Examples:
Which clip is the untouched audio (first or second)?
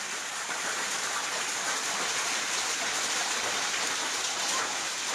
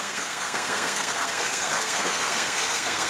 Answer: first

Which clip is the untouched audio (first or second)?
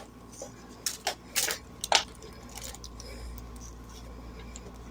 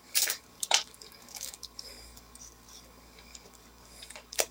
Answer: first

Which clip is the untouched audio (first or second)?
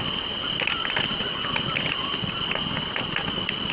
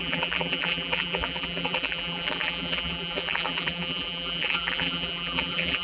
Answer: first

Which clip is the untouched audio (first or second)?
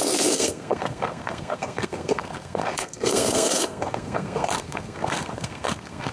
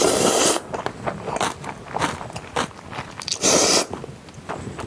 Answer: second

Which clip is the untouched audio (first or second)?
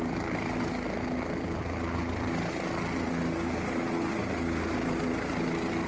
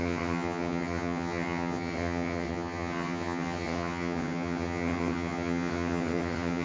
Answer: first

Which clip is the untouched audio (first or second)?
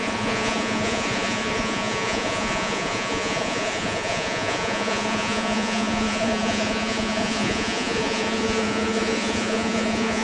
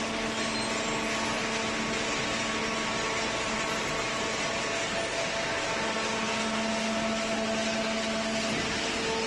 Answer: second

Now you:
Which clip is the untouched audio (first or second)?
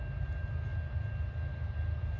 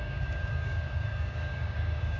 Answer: first